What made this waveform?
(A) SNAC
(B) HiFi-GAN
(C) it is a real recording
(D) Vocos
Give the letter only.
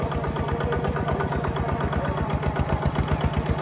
C